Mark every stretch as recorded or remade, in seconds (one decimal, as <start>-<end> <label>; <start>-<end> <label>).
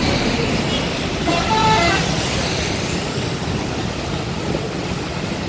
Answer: 0.0-5.5 recorded